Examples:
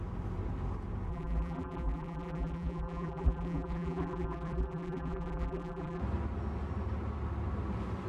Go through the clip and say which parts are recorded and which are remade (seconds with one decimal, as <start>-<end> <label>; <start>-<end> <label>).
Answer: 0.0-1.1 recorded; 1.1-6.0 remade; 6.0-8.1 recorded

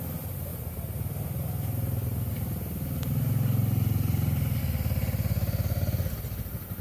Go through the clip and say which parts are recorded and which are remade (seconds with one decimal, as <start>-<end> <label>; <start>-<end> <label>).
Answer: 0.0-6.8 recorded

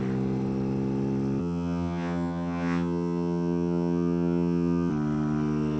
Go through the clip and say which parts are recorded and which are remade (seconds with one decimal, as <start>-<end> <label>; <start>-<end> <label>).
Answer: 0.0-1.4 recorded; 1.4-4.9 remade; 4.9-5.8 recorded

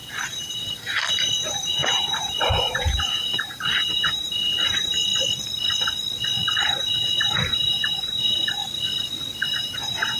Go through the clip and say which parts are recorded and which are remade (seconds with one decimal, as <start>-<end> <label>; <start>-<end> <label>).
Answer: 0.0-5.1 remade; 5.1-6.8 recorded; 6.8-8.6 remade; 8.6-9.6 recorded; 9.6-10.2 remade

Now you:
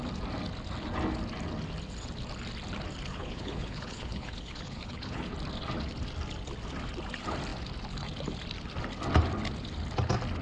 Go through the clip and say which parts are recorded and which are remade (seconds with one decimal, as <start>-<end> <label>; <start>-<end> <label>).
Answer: 0.0-3.1 recorded; 3.1-5.3 remade; 5.3-10.4 recorded